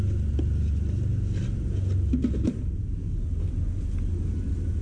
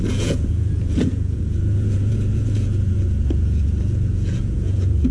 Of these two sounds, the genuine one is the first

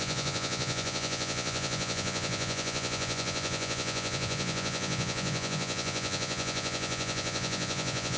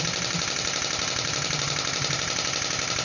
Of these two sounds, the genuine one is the second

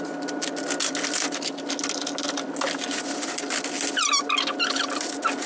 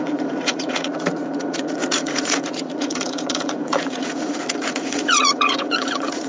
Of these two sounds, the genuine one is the first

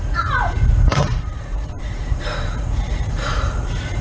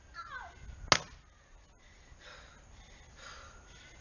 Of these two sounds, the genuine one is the second